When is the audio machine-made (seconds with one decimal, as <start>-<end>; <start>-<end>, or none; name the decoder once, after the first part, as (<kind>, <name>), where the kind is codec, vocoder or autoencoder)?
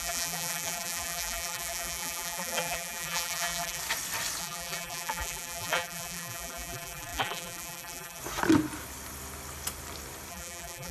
0.0-3.8 (vocoder, BigVGAN v2); 4.4-8.2; 10.3-10.9